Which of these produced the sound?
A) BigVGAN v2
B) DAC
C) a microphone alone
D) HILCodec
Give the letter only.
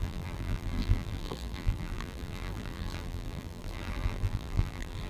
A